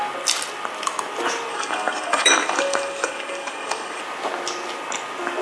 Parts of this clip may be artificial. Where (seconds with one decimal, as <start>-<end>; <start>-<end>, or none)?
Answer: 1.5-4.0